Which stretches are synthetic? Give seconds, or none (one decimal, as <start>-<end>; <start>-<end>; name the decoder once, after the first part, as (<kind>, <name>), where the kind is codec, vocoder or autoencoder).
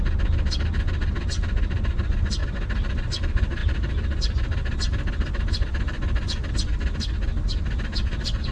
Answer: none